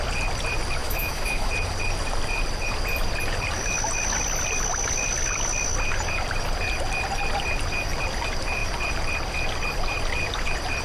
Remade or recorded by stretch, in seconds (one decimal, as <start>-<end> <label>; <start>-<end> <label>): 0.0-0.8 recorded; 0.8-1.5 remade; 1.5-10.8 recorded

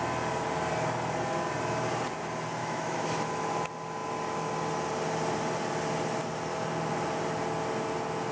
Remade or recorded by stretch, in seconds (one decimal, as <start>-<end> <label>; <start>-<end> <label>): 0.0-2.6 recorded; 2.6-3.5 remade; 3.5-8.3 recorded

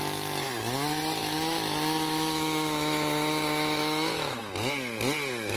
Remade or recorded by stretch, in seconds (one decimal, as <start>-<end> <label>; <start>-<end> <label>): 0.0-1.2 recorded; 1.2-4.4 remade; 4.4-5.6 recorded

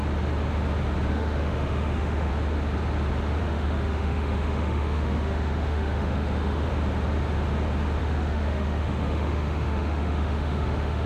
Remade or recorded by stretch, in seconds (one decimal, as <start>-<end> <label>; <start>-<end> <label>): 0.0-1.1 recorded; 1.1-2.3 remade; 2.3-3.4 recorded; 3.4-6.7 remade; 6.7-8.0 recorded; 8.0-11.1 remade

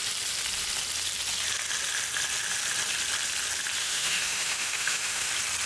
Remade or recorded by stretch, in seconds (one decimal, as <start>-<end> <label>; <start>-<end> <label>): 0.0-3.8 recorded; 3.8-5.3 remade; 5.3-5.7 recorded

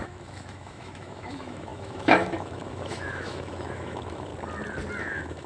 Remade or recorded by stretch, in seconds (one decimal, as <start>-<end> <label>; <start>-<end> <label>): 0.0-4.3 remade; 4.3-5.0 recorded; 5.0-5.5 remade

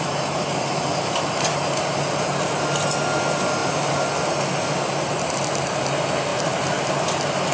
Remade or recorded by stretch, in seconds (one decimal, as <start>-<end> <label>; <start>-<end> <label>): 0.0-7.5 recorded